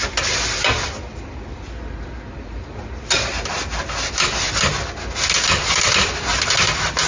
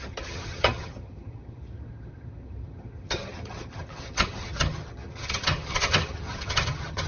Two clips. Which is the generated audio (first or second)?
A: second